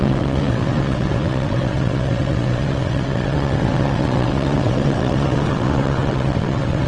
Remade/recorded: remade